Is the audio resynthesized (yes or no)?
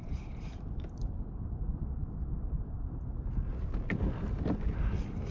no